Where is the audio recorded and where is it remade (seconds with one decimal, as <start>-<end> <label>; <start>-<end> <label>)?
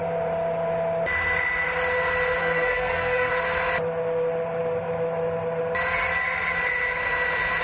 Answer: 0.0-2.4 recorded; 2.4-3.3 remade; 3.3-7.6 recorded